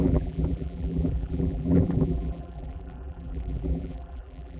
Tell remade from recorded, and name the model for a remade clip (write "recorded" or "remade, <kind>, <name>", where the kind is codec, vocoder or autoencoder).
remade, vocoder, BigVGAN v2